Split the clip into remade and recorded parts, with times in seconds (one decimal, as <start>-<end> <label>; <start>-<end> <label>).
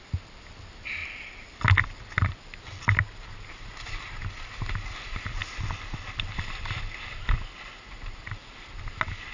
0.0-1.0 recorded; 1.0-4.3 remade; 4.3-5.4 recorded; 5.4-8.7 remade; 8.7-9.3 recorded